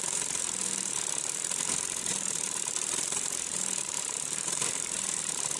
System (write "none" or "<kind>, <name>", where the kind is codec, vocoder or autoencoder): vocoder, BigVGAN v2